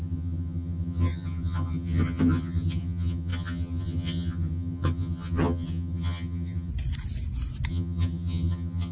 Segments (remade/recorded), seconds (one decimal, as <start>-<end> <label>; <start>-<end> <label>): 0.0-6.7 remade; 6.7-7.7 recorded; 7.7-8.9 remade